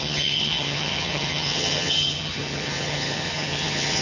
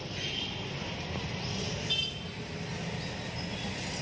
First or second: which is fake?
first